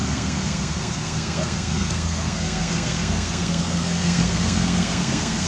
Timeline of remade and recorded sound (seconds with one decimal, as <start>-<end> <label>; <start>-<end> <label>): 0.0-5.5 remade